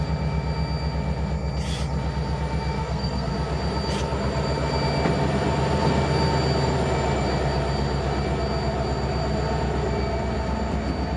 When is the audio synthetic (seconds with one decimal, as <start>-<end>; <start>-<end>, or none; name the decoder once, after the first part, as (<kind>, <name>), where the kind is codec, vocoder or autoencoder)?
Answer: 2.8-3.3 (codec, SNAC)